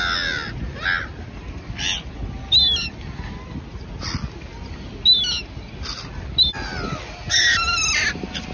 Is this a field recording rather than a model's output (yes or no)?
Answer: yes